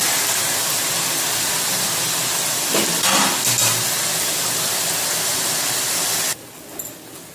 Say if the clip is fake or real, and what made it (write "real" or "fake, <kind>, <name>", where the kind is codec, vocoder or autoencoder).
real